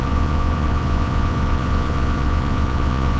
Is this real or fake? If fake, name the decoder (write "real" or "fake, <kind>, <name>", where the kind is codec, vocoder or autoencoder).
fake, vocoder, Vocos